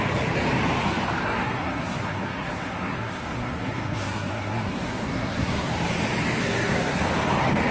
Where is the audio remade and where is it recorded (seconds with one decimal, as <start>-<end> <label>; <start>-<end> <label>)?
0.0-1.2 recorded; 1.2-5.7 remade; 5.7-6.4 recorded; 6.4-7.0 remade; 7.0-7.7 recorded